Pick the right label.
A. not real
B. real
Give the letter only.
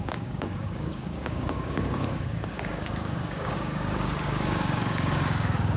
A